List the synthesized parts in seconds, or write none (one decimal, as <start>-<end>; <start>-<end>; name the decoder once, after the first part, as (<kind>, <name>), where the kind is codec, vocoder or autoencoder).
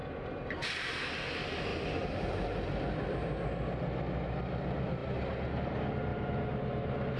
0.0-1.0 (vocoder, BigVGAN v2); 5.0-5.6; 6.1-7.2